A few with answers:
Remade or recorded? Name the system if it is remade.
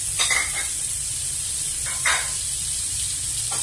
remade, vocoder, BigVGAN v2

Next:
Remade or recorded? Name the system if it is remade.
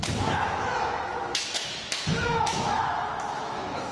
remade, autoencoder, DAC-VAE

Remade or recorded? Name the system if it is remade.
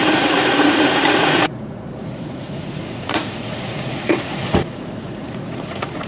remade, vocoder, Vocos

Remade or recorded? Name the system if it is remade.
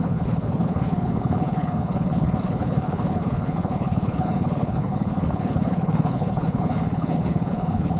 remade, codec, HILCodec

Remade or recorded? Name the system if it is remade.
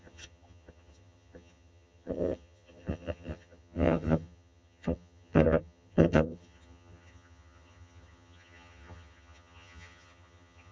remade, vocoder, HiFi-GAN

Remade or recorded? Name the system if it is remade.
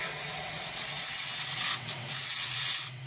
remade, vocoder, WaveNeXt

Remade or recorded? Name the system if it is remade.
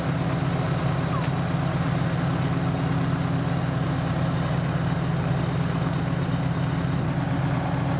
recorded